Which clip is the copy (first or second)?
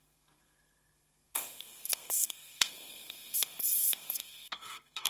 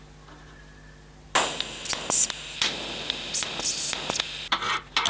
first